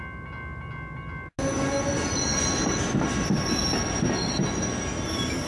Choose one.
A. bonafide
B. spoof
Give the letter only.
A